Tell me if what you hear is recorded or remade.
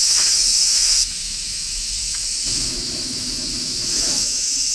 remade